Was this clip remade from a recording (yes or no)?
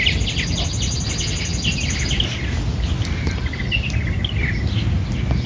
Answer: no